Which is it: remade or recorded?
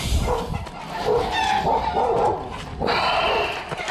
recorded